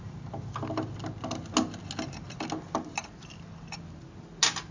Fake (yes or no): no